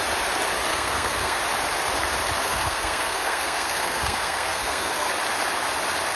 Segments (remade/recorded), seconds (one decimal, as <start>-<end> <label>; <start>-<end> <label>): 0.0-0.7 recorded; 0.7-1.4 remade; 1.4-2.4 recorded; 2.4-5.1 remade; 5.1-6.2 recorded